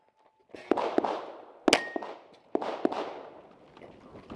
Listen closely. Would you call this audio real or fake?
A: real